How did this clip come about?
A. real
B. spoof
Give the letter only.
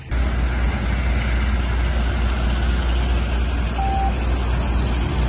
A